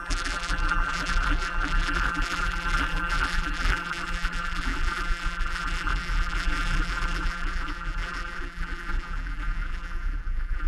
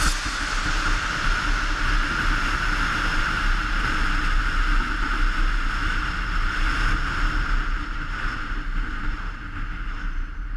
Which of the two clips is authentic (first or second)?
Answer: second